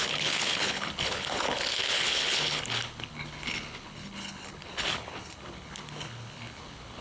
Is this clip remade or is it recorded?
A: remade